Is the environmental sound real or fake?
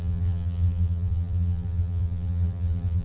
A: fake